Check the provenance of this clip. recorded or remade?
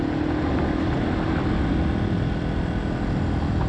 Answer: recorded